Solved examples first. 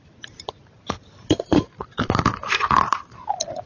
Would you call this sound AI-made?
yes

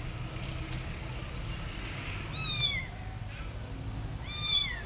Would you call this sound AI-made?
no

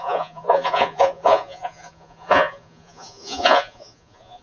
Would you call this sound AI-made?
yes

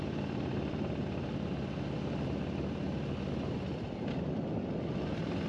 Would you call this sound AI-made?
no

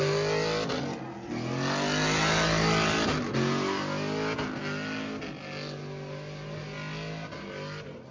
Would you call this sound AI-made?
no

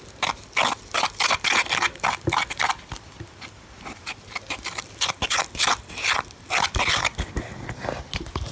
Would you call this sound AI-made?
no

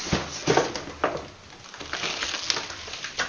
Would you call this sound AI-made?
no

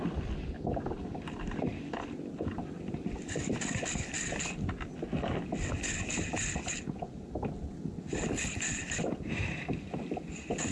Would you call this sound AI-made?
no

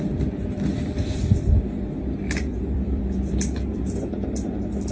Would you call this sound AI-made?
yes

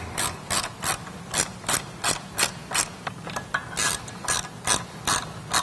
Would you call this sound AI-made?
no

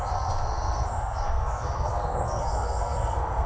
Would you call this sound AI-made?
yes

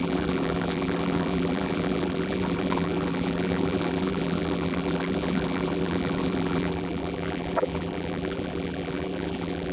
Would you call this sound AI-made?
yes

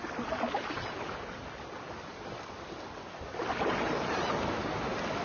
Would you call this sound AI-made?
no